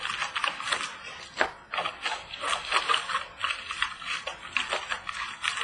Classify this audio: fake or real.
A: real